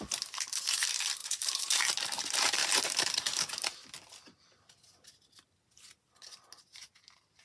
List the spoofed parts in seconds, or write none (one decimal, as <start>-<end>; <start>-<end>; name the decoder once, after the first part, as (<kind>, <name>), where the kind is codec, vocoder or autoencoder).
1.2-1.9 (vocoder, BigVGAN v2); 2.6-3.8